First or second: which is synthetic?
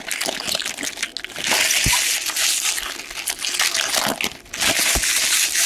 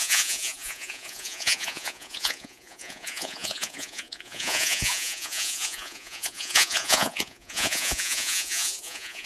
second